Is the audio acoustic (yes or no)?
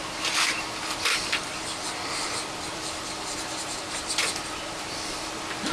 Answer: no